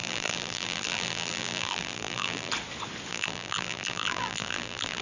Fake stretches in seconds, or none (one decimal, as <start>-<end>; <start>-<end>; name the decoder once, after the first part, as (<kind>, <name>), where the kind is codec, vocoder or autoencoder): 0.0-2.5 (vocoder, BigVGAN v2); 3.1-5.0